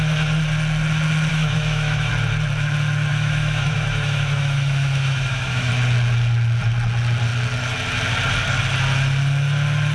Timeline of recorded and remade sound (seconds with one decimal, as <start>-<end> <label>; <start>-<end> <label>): 0.0-1.3 recorded; 1.3-2.1 remade; 2.1-3.1 recorded; 3.1-5.7 remade; 5.7-9.9 recorded